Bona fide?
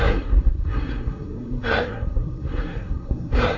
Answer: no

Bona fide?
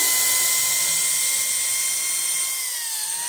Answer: yes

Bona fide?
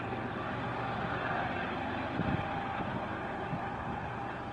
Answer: yes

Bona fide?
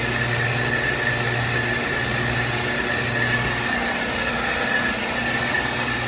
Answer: yes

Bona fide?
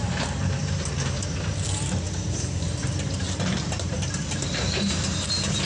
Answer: no